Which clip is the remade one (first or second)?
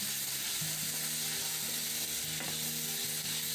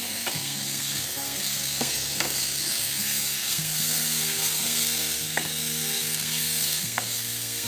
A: second